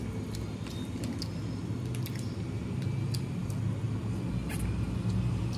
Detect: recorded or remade recorded